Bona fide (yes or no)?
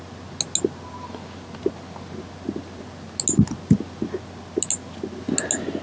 yes